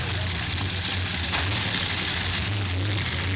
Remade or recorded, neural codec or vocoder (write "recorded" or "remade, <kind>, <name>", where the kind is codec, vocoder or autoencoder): recorded